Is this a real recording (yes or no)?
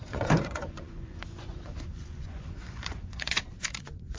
no